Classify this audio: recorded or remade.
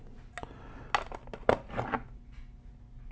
recorded